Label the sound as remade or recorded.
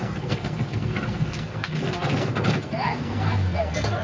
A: remade